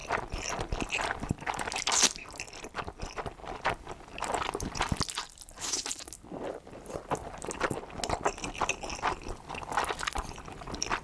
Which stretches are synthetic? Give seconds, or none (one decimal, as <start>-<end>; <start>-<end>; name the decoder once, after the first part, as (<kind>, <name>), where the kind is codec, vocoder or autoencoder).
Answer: none